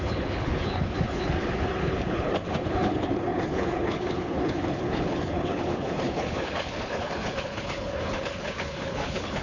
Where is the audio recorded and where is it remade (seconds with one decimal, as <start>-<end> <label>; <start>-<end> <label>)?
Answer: 0.0-9.4 remade